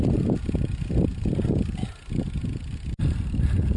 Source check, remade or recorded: recorded